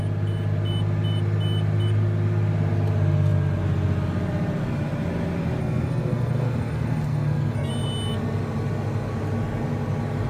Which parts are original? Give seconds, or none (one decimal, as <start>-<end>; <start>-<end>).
0.0-5.6; 7.7-10.3